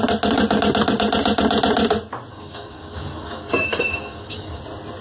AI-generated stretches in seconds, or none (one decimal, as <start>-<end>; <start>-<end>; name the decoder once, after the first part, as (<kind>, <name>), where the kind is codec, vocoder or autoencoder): 2.3-4.6 (codec, DAC)